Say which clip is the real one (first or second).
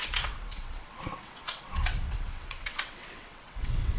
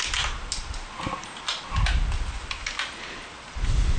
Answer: second